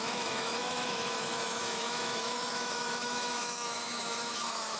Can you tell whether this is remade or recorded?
remade